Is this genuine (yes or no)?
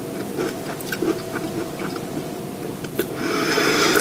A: yes